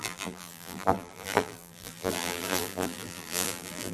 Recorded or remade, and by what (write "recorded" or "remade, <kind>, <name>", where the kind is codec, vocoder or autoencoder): remade, vocoder, BigVGAN v2